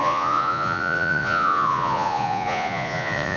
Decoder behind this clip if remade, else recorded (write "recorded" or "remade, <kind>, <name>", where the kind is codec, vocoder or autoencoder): remade, vocoder, Vocos